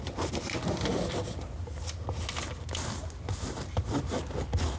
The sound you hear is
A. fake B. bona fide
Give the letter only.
B